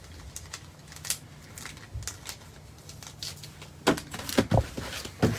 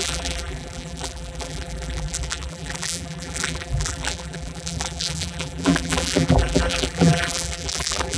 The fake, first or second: second